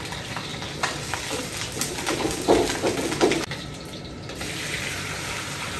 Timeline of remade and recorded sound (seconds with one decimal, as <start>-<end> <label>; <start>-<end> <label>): 0.0-5.8 recorded